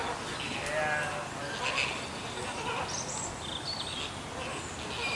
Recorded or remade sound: recorded